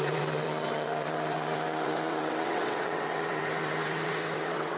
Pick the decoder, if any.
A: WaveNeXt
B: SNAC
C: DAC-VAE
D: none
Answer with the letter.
A